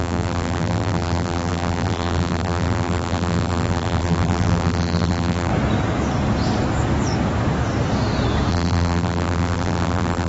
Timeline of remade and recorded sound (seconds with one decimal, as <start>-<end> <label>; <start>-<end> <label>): 0.0-5.5 remade; 5.5-8.5 recorded; 8.5-10.3 remade